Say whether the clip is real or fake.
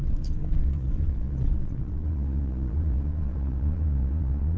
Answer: fake